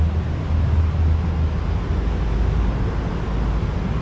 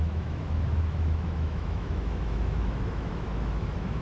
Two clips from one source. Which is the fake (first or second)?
second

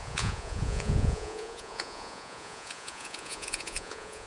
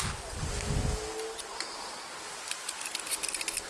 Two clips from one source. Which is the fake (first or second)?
first